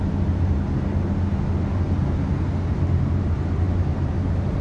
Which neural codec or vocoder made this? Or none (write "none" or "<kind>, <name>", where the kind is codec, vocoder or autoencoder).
none